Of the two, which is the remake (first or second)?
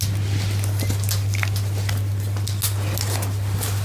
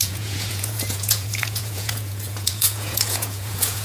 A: second